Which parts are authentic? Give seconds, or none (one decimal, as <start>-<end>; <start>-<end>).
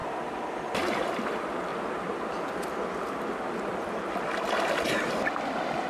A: 0.0-5.9